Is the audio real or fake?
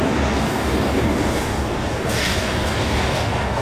fake